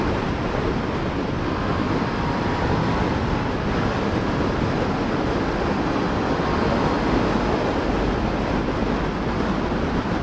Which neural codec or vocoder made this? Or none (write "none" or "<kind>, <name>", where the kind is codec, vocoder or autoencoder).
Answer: none